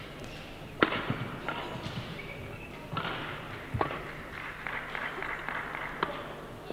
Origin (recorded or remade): recorded